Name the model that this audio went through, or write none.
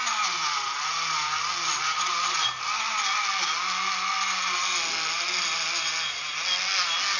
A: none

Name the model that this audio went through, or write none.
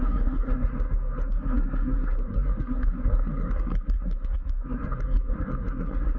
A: codec, SNAC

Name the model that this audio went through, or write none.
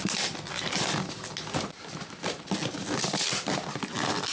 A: none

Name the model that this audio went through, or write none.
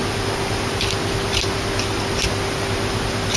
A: none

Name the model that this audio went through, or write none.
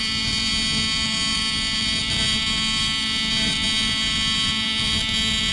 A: none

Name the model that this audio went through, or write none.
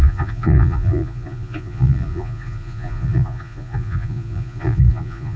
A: vocoder, Vocos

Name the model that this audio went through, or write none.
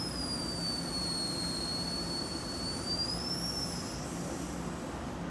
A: none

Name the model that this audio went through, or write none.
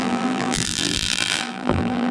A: vocoder, BigVGAN v2